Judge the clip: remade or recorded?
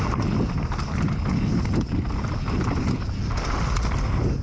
recorded